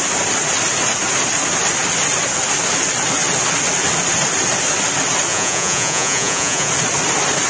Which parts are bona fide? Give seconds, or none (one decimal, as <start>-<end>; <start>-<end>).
0.0-5.3; 6.7-7.5